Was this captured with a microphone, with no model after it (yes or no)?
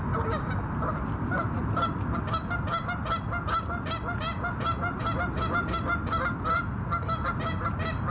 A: yes